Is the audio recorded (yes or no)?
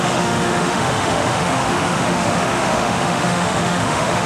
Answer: no